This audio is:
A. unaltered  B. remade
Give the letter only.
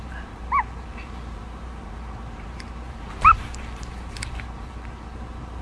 B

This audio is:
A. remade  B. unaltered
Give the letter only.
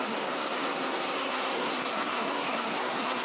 A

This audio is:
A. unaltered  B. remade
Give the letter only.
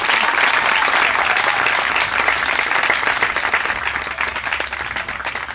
A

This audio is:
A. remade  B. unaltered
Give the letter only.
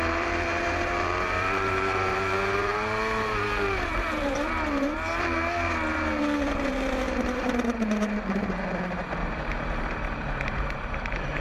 A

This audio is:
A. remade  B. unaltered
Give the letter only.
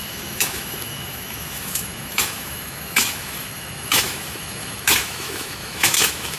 A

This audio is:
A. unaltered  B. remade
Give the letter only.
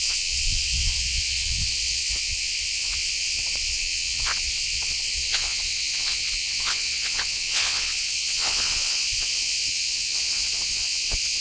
B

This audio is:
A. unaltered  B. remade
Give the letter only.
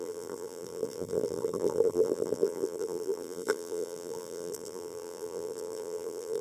B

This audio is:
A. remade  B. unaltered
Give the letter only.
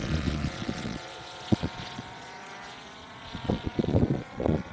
A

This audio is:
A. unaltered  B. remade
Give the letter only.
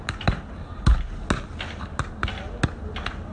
A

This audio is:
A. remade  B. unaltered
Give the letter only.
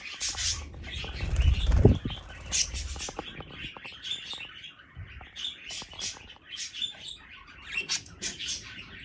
A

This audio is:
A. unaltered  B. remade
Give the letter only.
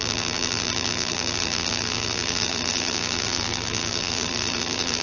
B